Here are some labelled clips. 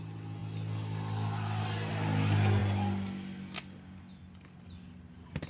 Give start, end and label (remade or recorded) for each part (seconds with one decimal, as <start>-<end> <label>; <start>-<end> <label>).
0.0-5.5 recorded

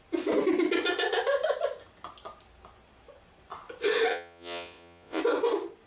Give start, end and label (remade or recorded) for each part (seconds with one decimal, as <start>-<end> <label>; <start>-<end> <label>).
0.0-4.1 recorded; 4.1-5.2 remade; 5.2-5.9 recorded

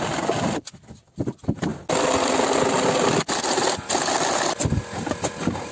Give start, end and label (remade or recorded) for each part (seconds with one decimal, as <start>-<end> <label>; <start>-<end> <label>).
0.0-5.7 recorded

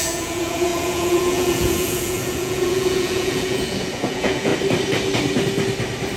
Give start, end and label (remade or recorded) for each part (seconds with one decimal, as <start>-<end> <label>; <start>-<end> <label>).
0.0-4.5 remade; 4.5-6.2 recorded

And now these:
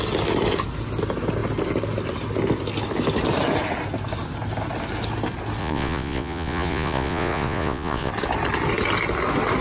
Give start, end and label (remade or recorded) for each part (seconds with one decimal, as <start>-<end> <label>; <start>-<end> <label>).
0.0-5.6 recorded; 5.6-8.1 remade; 8.1-9.6 recorded

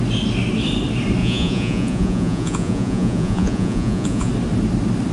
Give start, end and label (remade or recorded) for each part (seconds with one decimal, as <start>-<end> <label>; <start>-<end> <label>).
0.0-1.2 recorded; 1.2-4.3 remade; 4.3-5.1 recorded